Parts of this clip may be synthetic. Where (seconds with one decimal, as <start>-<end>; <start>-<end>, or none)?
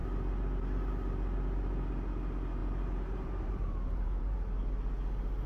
2.6-4.5